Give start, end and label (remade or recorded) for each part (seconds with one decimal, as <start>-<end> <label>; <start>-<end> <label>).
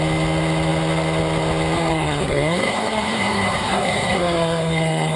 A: 0.0-1.9 recorded; 1.9-5.2 remade